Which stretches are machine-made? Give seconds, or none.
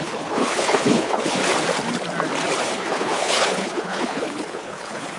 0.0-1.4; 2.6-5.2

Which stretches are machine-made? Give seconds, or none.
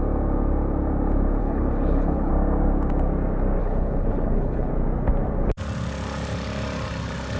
1.4-2.3; 3.6-4.7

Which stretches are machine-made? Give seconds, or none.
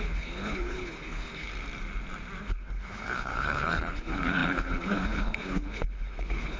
0.0-1.5; 2.4-6.6